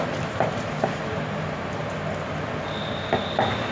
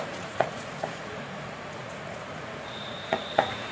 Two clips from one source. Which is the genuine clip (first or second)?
first